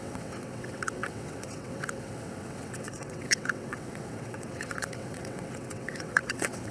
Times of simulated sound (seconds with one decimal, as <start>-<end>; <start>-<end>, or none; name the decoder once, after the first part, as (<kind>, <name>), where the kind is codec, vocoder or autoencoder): 0.0-6.7 (vocoder, WaveNeXt)